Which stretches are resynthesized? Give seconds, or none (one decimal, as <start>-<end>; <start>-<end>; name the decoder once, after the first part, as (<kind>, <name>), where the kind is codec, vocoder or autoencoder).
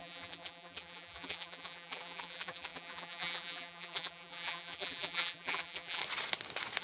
0.0-6.0 (vocoder, BigVGAN v2)